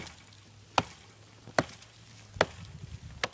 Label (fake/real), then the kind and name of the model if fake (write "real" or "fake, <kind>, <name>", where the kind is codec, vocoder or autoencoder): real